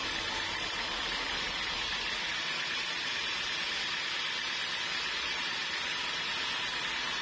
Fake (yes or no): no